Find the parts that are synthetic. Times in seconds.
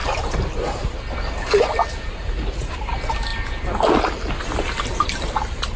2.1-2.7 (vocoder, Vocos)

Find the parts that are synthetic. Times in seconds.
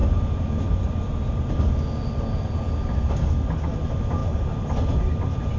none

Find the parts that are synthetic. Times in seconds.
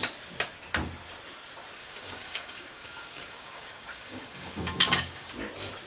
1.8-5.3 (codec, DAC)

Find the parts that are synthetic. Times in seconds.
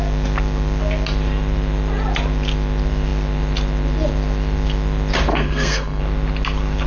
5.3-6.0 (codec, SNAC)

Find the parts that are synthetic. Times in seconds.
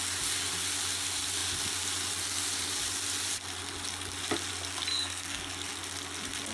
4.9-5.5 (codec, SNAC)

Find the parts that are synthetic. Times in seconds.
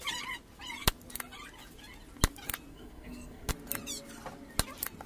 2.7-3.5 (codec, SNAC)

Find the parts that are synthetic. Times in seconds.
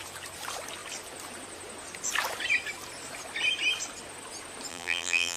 4.7-5.4 (vocoder, BigVGAN v2)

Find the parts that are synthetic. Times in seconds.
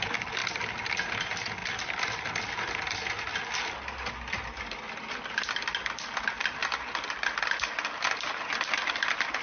none